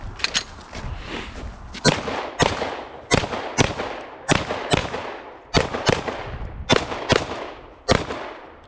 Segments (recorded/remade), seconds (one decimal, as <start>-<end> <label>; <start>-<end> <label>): 0.0-8.7 recorded